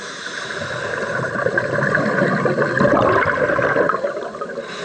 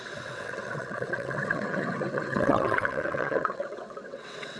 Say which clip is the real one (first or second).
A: first